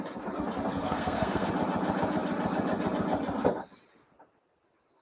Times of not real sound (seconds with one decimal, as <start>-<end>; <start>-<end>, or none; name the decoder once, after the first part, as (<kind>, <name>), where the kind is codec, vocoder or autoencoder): 0.7-1.5 (codec, SNAC)